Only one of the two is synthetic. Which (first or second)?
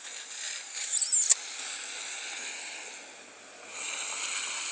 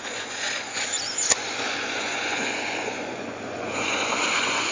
second